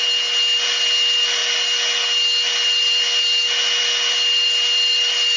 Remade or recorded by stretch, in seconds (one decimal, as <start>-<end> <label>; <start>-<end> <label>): 0.0-5.4 recorded